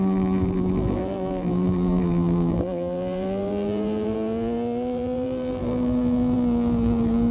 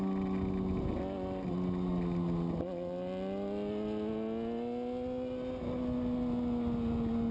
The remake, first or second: first